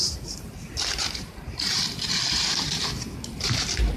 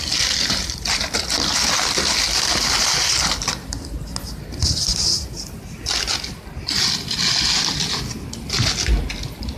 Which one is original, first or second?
second